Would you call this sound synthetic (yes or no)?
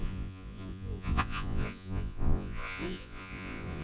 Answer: yes